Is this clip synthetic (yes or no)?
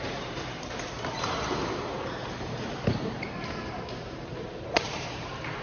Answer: yes